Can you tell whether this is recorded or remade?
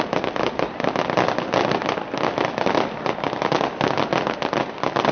recorded